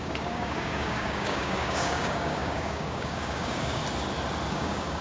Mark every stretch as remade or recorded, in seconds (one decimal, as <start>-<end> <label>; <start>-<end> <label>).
0.0-3.8 remade; 3.8-4.5 recorded; 4.5-5.0 remade